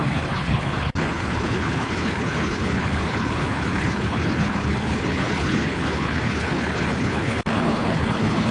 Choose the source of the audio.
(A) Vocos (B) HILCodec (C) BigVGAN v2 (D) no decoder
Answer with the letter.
B